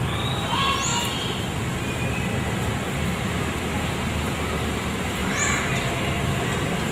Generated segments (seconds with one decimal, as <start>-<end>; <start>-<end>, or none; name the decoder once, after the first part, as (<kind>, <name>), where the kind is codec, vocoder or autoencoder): 5.2-5.9 (vocoder, BigVGAN v2)